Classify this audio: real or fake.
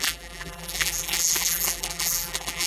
fake